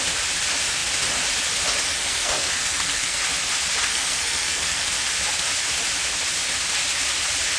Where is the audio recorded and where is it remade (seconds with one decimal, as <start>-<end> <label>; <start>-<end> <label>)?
0.0-1.9 recorded; 1.9-3.2 remade; 3.2-3.9 recorded; 3.9-4.9 remade; 4.9-7.6 recorded